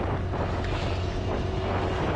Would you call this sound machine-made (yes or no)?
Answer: no